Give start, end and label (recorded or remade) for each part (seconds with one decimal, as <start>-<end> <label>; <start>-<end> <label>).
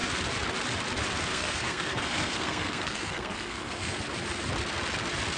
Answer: 0.0-1.3 recorded; 1.3-4.0 remade; 4.0-5.4 recorded